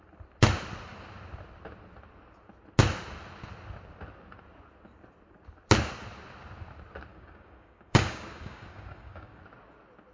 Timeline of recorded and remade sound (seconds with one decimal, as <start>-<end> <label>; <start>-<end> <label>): 0.0-7.1 recorded; 7.1-9.4 remade; 9.4-10.1 recorded